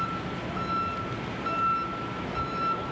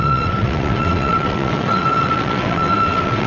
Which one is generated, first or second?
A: second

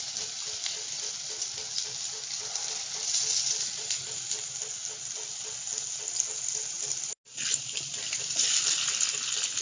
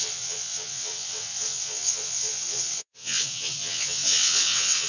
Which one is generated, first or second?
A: second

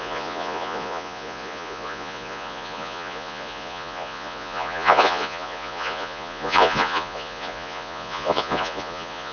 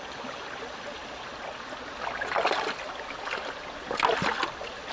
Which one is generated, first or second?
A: first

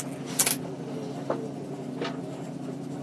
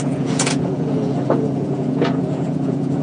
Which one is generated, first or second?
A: second